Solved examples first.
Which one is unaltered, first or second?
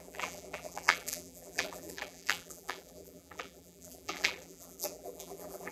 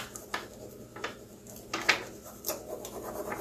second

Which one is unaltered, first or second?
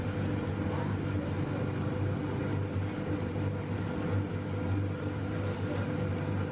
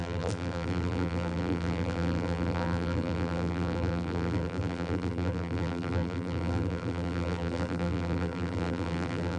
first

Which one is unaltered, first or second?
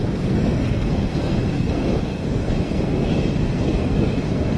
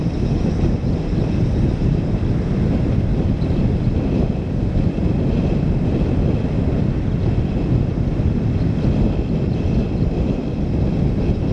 second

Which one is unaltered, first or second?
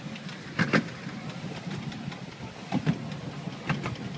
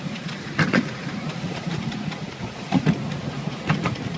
first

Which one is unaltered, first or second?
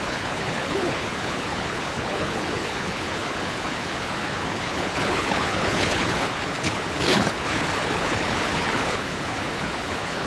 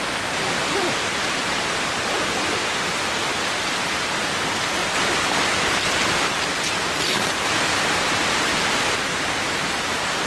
second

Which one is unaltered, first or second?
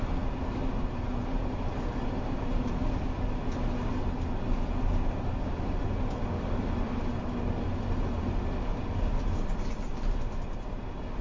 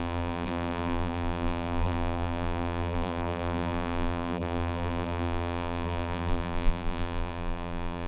first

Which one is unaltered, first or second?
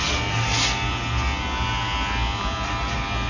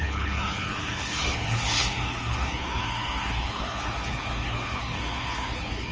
first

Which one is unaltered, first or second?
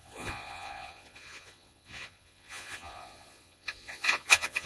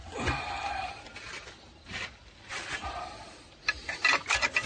second